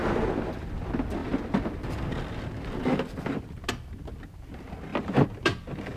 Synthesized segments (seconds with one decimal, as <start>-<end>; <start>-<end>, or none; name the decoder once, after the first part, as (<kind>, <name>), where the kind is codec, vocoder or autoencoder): 4.9-6.0 (vocoder, BigVGAN v2)